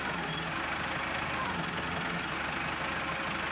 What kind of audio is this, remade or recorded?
recorded